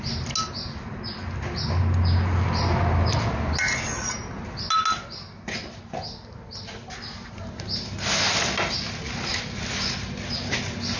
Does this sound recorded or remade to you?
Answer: recorded